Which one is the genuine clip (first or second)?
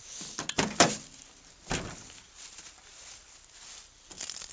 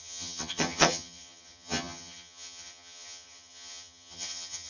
first